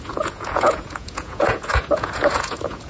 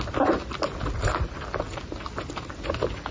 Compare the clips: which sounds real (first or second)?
second